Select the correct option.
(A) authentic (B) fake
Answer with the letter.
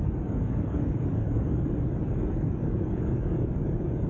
B